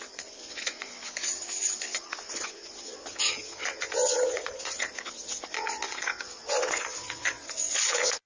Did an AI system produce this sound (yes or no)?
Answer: yes